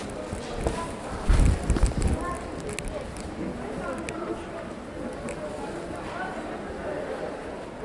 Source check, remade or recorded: recorded